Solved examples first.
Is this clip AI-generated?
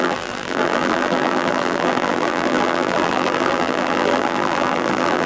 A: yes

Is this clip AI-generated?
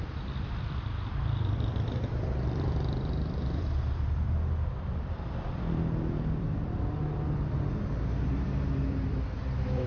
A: yes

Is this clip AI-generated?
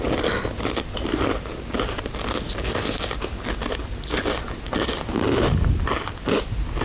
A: no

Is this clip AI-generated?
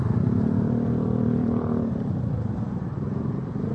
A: yes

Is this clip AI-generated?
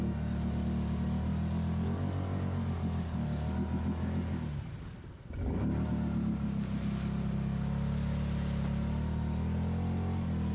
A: no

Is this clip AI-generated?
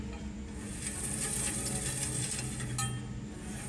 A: no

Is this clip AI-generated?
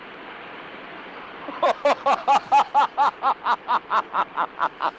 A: yes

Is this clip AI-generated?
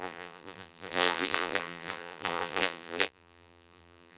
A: yes